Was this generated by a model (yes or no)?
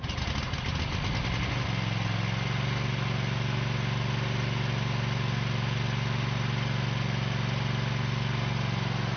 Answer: no